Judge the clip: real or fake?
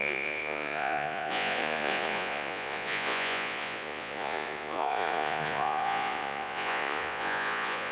fake